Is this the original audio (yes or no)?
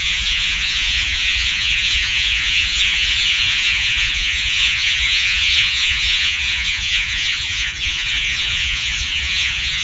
no